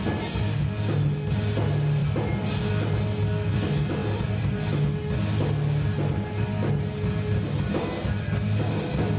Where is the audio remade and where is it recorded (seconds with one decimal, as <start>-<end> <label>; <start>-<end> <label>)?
0.0-9.2 recorded